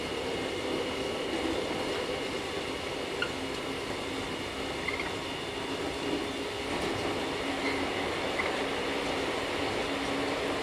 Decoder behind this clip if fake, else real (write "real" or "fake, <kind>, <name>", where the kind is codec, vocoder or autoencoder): real